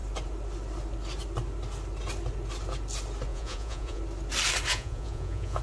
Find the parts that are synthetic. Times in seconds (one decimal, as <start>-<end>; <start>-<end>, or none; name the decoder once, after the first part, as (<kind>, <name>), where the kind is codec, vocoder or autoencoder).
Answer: 3.3-4.0 (vocoder, Vocos); 4.7-5.6